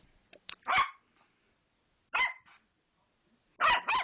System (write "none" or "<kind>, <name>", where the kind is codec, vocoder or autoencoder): none